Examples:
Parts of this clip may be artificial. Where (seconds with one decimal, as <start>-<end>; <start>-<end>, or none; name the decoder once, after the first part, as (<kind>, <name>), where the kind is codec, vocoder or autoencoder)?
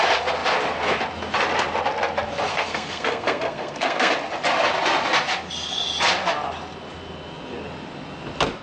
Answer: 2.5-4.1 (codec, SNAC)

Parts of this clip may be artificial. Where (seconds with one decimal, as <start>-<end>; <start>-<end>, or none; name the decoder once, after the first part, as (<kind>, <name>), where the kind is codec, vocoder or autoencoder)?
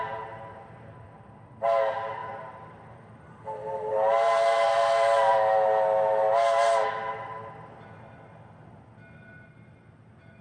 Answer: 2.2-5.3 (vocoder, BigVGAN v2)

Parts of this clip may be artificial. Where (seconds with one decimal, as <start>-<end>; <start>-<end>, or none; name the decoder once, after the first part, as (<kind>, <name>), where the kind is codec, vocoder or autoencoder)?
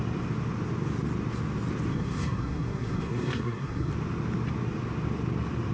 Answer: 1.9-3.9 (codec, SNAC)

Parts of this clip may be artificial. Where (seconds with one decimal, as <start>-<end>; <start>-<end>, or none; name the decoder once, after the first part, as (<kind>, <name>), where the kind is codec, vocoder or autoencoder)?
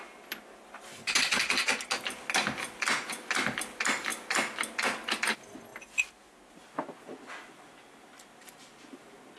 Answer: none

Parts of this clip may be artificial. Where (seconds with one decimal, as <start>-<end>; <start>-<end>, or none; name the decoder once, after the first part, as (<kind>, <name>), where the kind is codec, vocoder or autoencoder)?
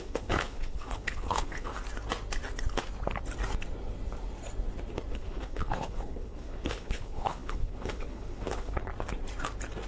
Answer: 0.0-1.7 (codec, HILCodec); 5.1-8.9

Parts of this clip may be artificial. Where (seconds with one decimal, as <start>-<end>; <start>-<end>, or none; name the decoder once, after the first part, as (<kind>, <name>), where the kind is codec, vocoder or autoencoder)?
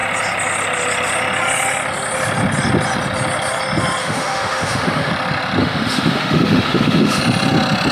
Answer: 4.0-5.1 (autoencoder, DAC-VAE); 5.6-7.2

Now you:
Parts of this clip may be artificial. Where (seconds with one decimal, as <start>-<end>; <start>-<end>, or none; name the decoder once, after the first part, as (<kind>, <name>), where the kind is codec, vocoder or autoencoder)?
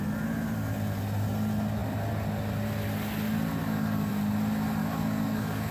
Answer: 3.6-4.1 (codec, DAC); 4.8-5.7